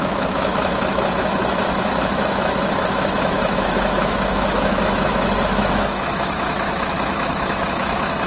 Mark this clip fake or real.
fake